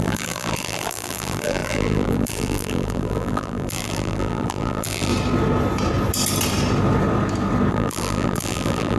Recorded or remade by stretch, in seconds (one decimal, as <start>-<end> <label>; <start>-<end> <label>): 0.0-5.1 remade; 5.1-7.7 recorded; 7.7-9.0 remade